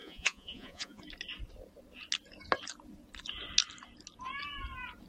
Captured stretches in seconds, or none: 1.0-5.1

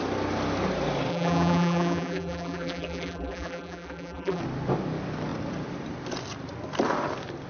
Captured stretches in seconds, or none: 0.0-1.1; 4.4-7.5

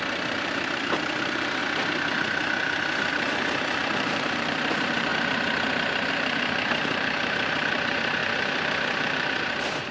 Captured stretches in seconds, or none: 1.6-3.1; 5.1-6.1

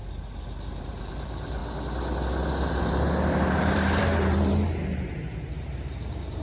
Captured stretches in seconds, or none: 0.0-0.8; 1.6-2.7

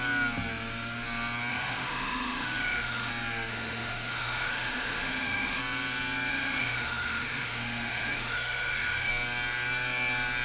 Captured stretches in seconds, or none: 0.0-1.5; 3.1-3.5; 5.6-6.3; 9.1-10.4

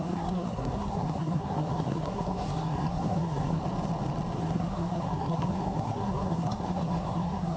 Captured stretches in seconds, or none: 3.6-4.4